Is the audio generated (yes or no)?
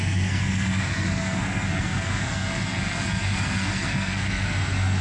yes